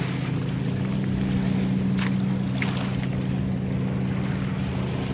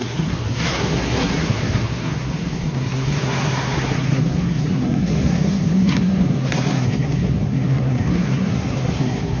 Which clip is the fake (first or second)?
second